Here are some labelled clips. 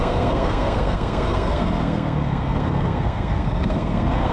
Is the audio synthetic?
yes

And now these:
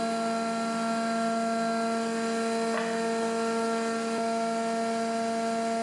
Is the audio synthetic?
no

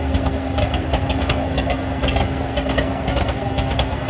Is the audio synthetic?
yes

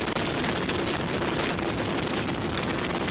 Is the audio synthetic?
no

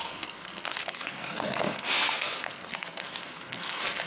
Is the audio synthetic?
yes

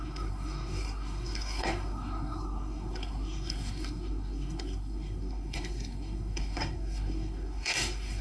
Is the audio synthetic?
yes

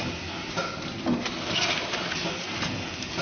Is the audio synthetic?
no